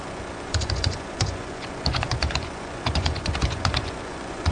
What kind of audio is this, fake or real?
fake